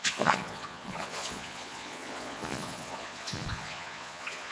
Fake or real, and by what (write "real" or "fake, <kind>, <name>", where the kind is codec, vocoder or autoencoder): fake, vocoder, Vocos